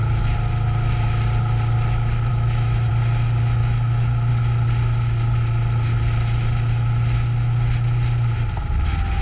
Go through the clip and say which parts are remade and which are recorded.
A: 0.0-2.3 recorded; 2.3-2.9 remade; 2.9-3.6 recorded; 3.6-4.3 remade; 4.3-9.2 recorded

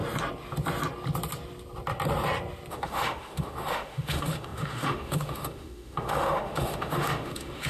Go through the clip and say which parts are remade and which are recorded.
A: 0.0-2.7 recorded; 2.7-7.7 remade

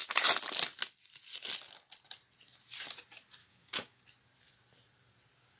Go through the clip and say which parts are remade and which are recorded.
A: 0.0-3.4 recorded; 3.4-4.0 remade; 4.0-5.6 recorded

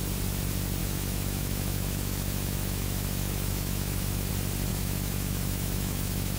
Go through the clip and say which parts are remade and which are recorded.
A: 0.0-0.8 recorded; 0.8-4.3 remade; 4.3-4.7 recorded; 4.7-6.4 remade